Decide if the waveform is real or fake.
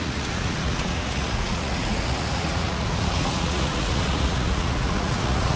fake